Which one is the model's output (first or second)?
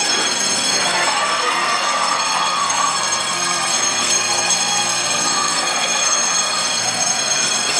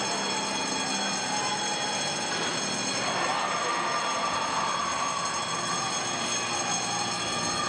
first